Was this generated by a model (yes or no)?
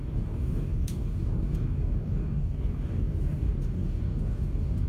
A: yes